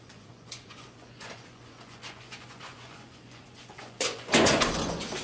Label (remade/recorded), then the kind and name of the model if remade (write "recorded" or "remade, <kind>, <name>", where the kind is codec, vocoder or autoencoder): remade, vocoder, Vocos